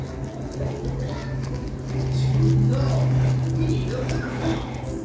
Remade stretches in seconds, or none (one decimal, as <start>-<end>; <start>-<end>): none